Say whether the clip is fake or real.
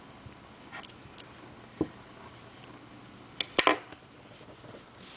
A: real